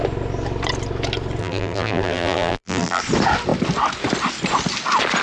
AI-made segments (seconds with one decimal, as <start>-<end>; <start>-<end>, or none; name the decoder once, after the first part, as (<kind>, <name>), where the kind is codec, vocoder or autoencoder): 1.4-3.0 (vocoder, BigVGAN v2)